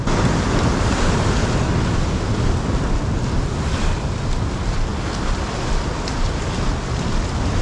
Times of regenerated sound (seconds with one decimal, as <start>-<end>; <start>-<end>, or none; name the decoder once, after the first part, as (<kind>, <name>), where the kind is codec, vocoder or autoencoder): none